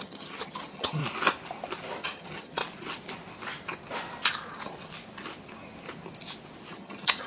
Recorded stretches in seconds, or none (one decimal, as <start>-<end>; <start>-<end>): 1.0-2.0; 2.6-6.7

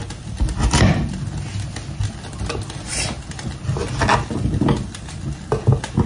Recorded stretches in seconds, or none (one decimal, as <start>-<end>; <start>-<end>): 0.0-6.1

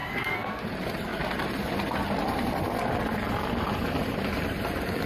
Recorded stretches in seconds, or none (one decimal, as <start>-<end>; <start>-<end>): 0.6-5.1